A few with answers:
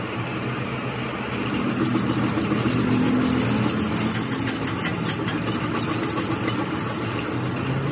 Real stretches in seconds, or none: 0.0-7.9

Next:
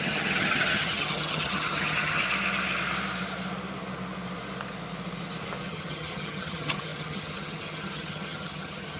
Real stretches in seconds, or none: 2.2-5.7

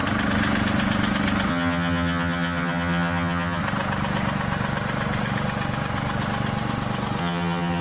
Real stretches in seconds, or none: 0.0-1.5; 3.6-7.2

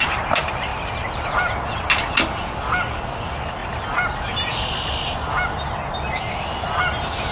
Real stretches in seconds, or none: 0.0-7.3

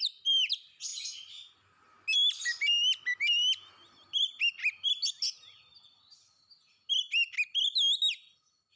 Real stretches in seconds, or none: 0.0-8.8

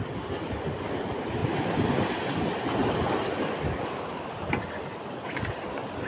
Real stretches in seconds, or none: 0.0-6.1

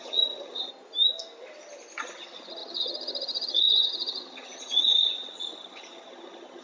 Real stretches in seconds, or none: 0.7-2.0

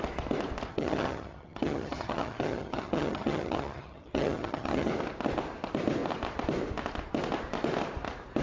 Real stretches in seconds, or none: 0.0-0.7; 4.9-8.4